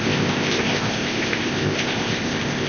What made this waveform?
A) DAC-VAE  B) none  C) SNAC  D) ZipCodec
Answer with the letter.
D